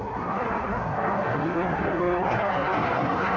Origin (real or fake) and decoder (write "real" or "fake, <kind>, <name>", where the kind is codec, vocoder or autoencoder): fake, codec, SNAC